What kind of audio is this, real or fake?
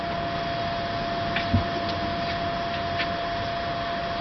real